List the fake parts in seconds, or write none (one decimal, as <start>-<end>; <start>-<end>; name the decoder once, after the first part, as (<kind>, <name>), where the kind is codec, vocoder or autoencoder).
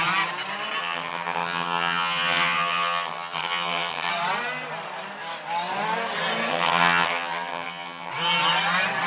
0.8-4.1 (vocoder, HiFi-GAN); 6.5-8.1